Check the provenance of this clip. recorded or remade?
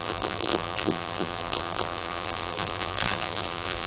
remade